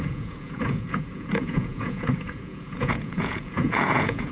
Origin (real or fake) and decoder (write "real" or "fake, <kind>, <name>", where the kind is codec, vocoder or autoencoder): fake, vocoder, Vocos